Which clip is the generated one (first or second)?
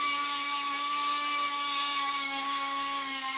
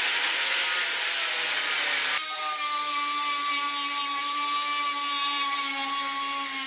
first